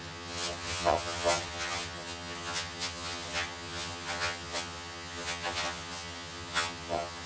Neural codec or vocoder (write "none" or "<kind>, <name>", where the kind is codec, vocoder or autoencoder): vocoder, HiFi-GAN